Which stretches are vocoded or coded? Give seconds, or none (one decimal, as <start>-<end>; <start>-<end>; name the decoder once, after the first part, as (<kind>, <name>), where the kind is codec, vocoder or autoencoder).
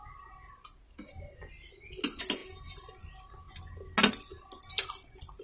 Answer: none